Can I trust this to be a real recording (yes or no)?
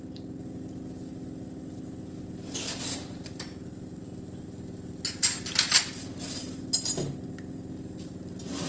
yes